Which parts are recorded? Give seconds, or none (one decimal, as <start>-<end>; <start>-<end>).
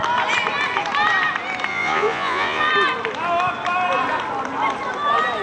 0.0-1.7; 2.7-5.4